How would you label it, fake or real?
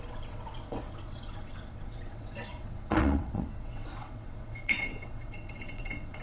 fake